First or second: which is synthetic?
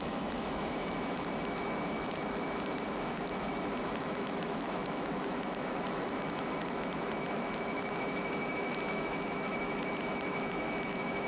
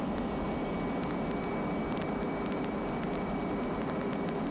first